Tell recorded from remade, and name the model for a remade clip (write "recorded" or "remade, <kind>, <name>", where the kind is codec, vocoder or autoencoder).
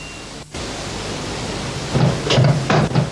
recorded